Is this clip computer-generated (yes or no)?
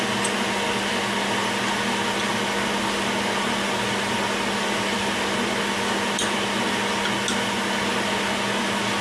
no